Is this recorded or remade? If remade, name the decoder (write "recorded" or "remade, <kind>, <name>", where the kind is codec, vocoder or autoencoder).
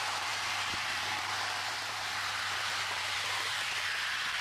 remade, vocoder, BigVGAN v2